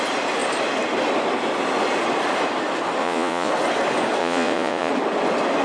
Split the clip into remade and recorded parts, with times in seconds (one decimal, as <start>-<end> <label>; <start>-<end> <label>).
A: 0.0-3.0 recorded; 3.0-3.5 remade; 3.5-4.2 recorded; 4.2-4.9 remade; 4.9-5.6 recorded